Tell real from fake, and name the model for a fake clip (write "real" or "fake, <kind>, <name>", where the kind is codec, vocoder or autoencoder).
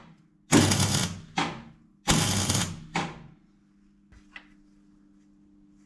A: real